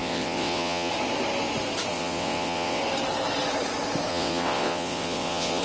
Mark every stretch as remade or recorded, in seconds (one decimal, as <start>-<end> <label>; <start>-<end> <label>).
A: 0.0-0.9 remade; 0.9-1.9 recorded; 1.9-2.8 remade; 2.8-4.1 recorded; 4.1-5.6 remade